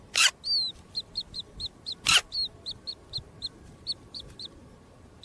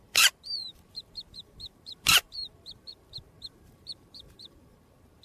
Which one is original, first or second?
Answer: first